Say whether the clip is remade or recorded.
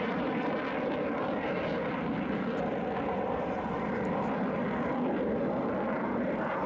remade